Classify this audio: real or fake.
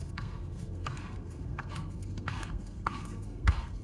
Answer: fake